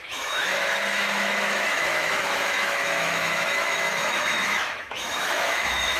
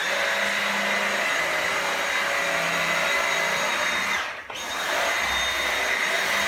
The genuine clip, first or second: second